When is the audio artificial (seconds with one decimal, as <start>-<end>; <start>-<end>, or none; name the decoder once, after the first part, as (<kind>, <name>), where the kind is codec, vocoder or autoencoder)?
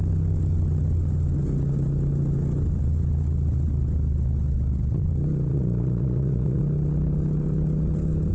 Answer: 5.5-6.6 (vocoder, Vocos)